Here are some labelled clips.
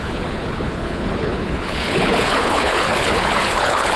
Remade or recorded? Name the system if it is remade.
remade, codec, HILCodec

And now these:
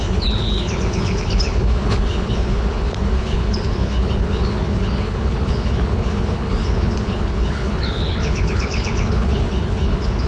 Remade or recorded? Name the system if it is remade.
remade, codec, HILCodec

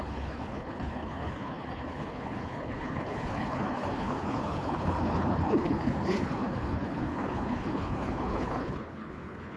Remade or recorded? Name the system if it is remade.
remade, codec, HILCodec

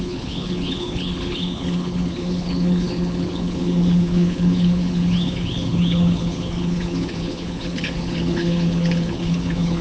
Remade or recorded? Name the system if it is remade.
remade, codec, HILCodec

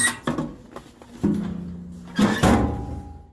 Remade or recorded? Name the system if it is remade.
recorded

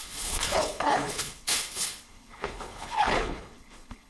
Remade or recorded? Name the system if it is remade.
remade, codec, HILCodec